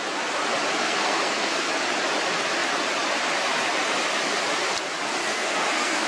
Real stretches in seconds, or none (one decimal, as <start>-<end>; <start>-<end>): 0.0-0.8; 1.7-5.2